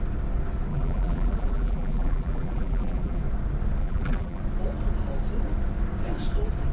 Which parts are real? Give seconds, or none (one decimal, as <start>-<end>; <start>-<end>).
0.0-0.7; 3.2-3.8; 4.4-6.7